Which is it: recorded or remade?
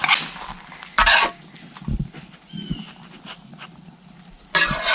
recorded